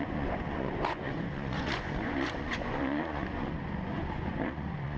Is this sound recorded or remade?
remade